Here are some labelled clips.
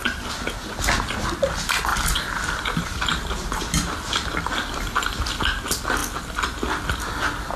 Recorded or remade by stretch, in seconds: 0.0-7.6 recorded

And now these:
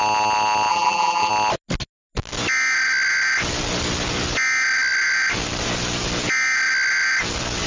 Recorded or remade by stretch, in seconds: 0.0-0.7 recorded; 0.7-1.3 remade; 1.3-7.7 recorded

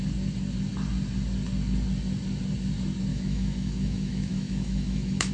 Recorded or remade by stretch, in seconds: 0.0-3.1 recorded; 3.1-5.3 remade

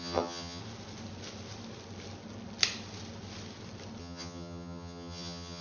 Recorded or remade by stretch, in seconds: 0.0-0.6 remade; 0.6-4.0 recorded; 4.0-5.6 remade